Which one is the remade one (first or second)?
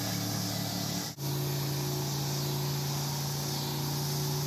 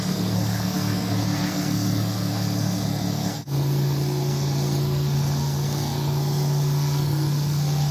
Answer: second